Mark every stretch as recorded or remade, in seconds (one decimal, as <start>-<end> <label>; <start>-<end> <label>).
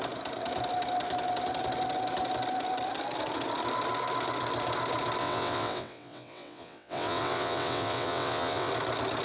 0.0-5.2 recorded; 5.2-8.7 remade; 8.7-9.2 recorded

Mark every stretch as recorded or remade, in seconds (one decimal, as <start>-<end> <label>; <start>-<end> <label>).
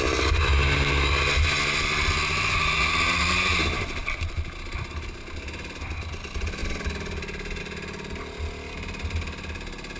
0.0-10.0 recorded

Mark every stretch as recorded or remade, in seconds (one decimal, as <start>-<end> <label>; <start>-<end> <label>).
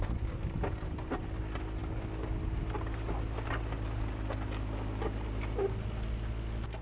0.0-6.8 recorded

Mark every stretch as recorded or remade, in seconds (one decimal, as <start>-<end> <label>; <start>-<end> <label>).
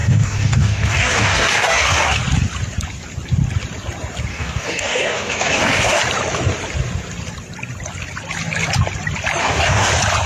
0.0-2.2 remade; 2.2-4.3 recorded; 4.3-6.0 remade; 6.0-9.4 recorded; 9.4-9.9 remade; 9.9-10.3 recorded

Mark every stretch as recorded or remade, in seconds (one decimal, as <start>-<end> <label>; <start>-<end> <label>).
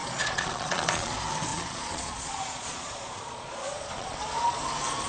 0.0-1.1 remade; 1.1-1.5 recorded; 1.5-4.6 remade; 4.6-5.1 recorded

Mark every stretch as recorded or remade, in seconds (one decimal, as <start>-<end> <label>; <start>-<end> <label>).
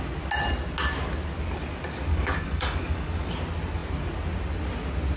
0.0-2.1 recorded; 2.1-3.3 remade; 3.3-5.2 recorded